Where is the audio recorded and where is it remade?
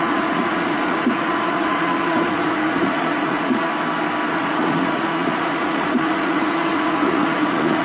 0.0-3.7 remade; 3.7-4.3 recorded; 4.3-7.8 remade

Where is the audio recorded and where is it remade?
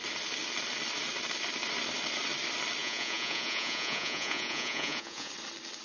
0.0-2.8 recorded; 2.8-5.3 remade; 5.3-5.8 recorded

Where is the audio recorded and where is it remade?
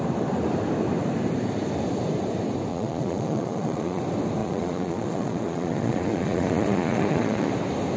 0.0-2.7 recorded; 2.7-4.0 remade; 4.0-4.4 recorded; 4.4-7.5 remade; 7.5-8.0 recorded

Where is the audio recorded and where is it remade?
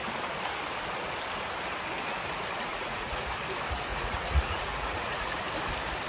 0.0-2.7 recorded; 2.7-3.3 remade; 3.3-3.9 recorded; 3.9-5.4 remade; 5.4-6.1 recorded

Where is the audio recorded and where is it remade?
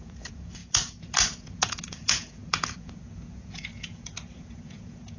0.0-5.2 remade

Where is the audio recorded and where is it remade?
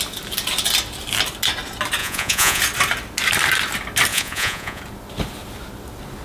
0.0-2.0 recorded; 2.0-2.6 remade; 2.6-4.1 recorded; 4.1-4.8 remade; 4.8-6.2 recorded